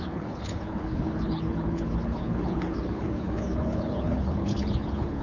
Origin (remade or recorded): remade